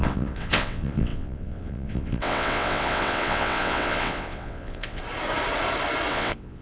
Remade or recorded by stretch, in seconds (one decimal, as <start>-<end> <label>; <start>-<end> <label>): 0.0-5.0 remade; 5.0-6.1 recorded; 6.1-6.6 remade